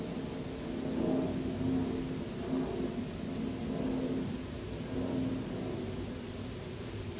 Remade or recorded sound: recorded